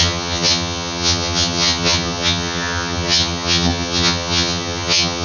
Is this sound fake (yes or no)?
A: yes